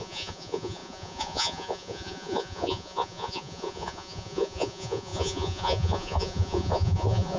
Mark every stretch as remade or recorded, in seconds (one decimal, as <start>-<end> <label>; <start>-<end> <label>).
0.0-7.4 remade